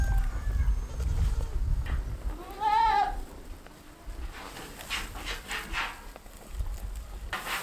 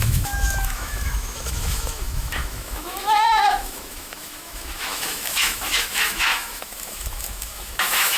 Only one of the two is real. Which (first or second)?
first